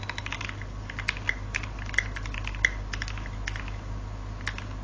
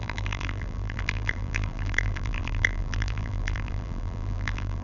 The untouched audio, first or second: first